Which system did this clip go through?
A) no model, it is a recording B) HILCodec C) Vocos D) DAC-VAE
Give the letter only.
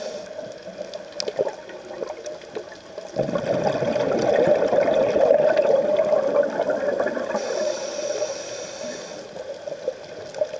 A